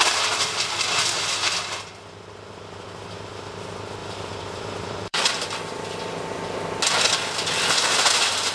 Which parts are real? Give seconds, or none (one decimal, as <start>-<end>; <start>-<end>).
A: 0.0-4.0; 6.4-8.5